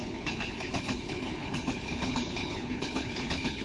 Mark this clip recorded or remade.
remade